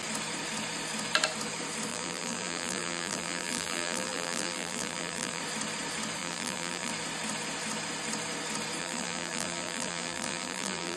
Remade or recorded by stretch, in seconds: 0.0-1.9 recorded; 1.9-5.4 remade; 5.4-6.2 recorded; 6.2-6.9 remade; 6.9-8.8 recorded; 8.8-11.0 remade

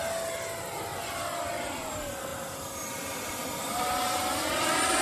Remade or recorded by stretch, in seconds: 0.0-5.0 recorded

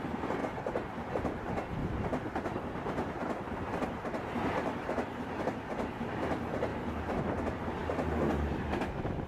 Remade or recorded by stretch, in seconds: 0.0-1.8 recorded; 1.8-5.4 remade; 5.4-6.7 recorded; 6.7-7.2 remade; 7.2-9.3 recorded